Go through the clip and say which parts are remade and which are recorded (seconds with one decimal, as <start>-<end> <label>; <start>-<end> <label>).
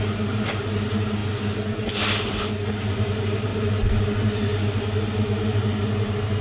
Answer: 0.0-6.4 recorded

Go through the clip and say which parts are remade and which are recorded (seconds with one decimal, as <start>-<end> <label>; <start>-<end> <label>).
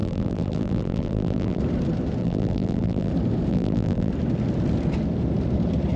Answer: 0.0-1.6 remade; 1.6-2.2 recorded; 2.2-3.1 remade; 3.1-3.5 recorded; 3.5-4.1 remade; 4.1-6.0 recorded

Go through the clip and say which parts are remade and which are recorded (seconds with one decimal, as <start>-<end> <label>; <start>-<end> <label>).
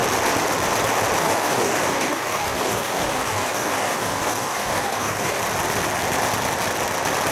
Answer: 0.0-1.2 recorded; 1.2-5.4 remade; 5.4-7.3 recorded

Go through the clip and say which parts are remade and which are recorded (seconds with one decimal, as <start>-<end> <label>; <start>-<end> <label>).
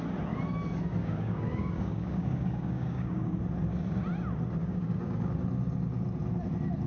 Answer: 0.0-1.0 recorded; 1.0-3.4 remade; 3.4-4.6 recorded; 4.6-5.3 remade; 5.3-6.9 recorded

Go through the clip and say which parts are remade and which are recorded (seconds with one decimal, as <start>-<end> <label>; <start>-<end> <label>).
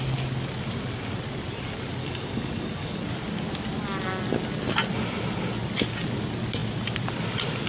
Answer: 0.0-2.0 recorded; 2.0-3.0 remade; 3.0-7.7 recorded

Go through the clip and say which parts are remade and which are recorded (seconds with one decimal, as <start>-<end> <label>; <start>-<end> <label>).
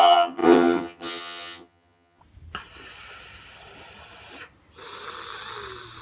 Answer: 0.0-2.2 remade; 2.2-6.0 recorded